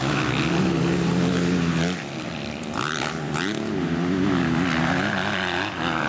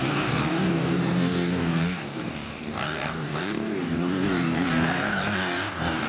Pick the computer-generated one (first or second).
second